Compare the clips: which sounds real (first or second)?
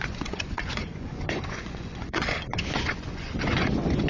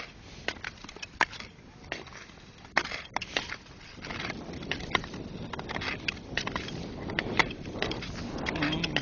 second